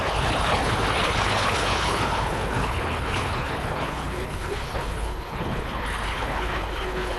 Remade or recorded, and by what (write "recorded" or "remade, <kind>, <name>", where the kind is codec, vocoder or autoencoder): remade, codec, HILCodec